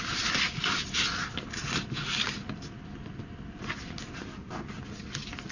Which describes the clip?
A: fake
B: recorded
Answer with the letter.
B